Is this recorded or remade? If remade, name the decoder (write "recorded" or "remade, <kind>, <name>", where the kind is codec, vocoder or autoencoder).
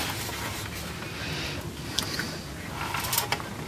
recorded